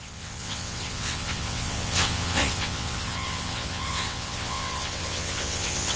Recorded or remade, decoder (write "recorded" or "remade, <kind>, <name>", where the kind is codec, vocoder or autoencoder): remade, vocoder, WaveNeXt